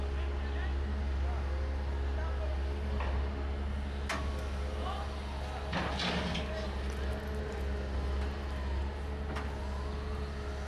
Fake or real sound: real